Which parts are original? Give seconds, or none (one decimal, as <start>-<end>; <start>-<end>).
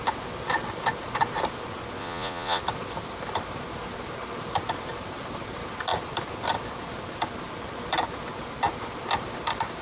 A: 0.0-2.0; 2.6-9.8